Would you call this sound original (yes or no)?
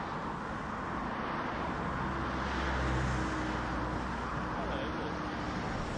yes